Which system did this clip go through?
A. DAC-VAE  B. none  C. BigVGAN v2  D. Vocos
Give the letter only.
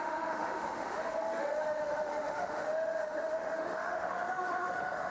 A